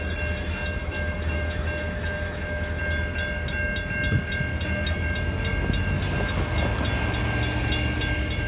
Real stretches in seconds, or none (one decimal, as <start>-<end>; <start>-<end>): 0.0-0.8; 2.8-8.5